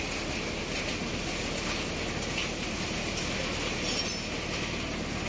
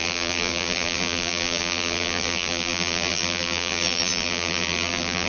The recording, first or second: first